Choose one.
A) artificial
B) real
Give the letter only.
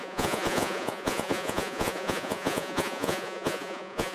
A